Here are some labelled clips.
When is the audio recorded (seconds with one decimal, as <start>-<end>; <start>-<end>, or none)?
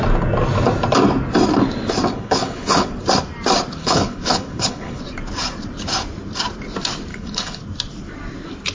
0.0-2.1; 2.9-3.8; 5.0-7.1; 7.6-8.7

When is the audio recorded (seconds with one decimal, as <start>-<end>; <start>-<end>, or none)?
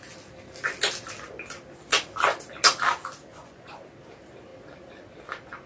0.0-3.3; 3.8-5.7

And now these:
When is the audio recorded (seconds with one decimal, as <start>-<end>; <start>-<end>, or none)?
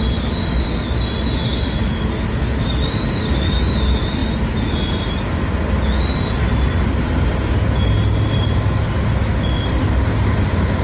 0.0-10.8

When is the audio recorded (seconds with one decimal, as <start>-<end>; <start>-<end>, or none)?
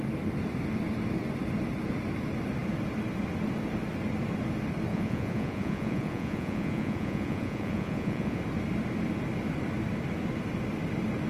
0.0-4.9; 8.4-11.3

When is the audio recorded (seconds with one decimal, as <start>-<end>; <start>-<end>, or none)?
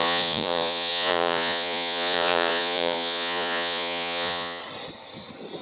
4.6-5.6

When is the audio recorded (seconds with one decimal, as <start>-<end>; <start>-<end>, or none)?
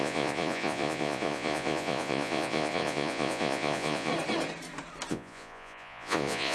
4.1-5.1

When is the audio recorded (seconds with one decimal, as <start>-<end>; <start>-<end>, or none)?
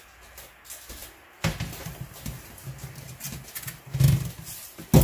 0.0-5.0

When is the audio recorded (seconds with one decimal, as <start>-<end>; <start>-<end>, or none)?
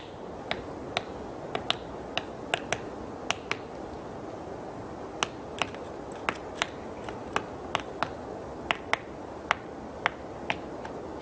0.0-11.2